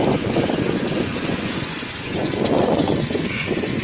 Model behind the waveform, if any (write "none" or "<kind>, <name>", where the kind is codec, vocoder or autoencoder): vocoder, Vocos